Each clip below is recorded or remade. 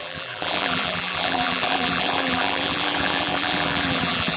remade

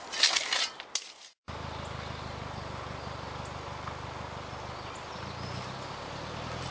recorded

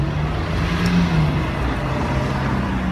recorded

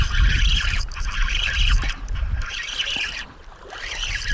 remade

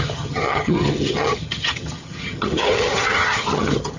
remade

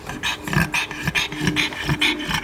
recorded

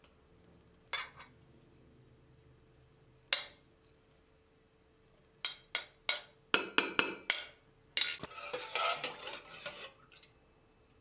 recorded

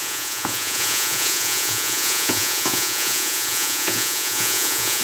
remade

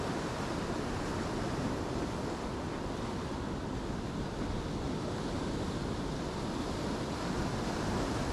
recorded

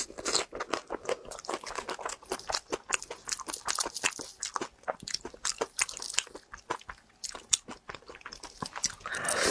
recorded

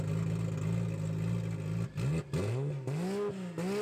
recorded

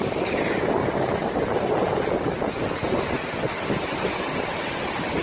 recorded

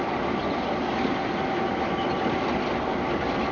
recorded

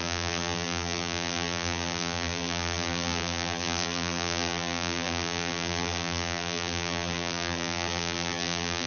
remade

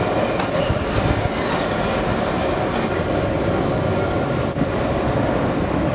recorded